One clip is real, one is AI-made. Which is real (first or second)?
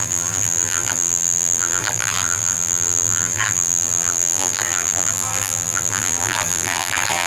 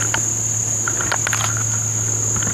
second